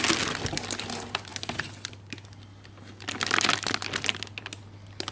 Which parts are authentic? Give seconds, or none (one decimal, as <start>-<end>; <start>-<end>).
0.0-5.1